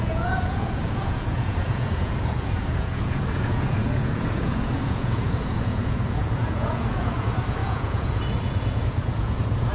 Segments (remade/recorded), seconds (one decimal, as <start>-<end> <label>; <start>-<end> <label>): 0.0-9.7 remade